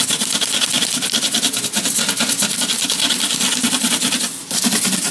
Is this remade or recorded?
recorded